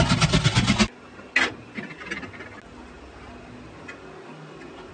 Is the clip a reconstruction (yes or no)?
no